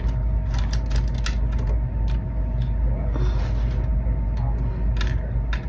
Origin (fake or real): real